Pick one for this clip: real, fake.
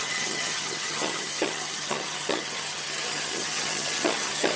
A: fake